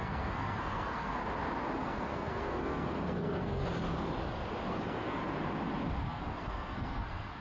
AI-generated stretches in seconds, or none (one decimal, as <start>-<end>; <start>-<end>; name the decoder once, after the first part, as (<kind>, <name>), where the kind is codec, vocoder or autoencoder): 0.0-1.2 (codec, SNAC); 1.8-3.6; 4.7-5.2; 6.0-7.4